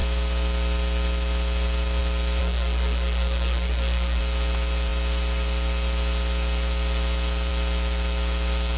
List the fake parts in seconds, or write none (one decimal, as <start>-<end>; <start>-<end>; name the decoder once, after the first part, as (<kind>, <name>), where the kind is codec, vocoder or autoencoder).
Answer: 2.4-4.2 (codec, SNAC)